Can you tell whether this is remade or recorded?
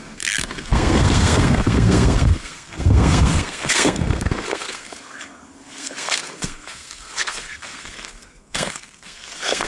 remade